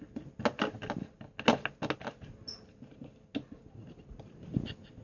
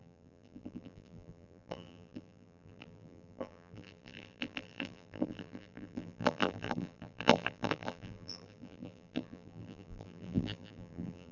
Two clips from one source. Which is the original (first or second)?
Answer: first